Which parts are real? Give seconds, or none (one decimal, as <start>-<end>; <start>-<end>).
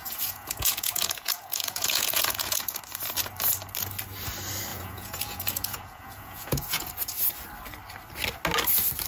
2.8-4.7; 6.9-9.1